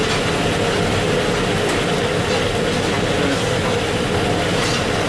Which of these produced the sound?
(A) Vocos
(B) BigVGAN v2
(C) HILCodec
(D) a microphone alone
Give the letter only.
D